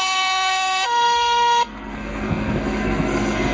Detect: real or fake fake